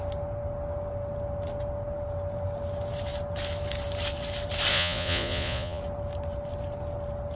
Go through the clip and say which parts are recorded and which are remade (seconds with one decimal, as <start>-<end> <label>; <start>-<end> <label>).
0.0-4.7 recorded; 4.7-5.8 remade; 5.8-7.4 recorded